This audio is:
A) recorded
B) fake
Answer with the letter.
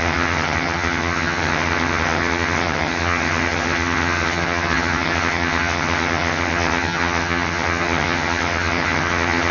B